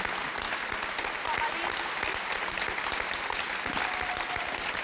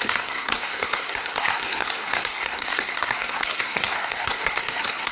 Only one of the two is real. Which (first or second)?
first